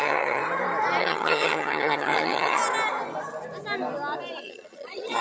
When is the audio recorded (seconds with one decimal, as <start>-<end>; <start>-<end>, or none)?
0.4-1.0; 2.6-4.4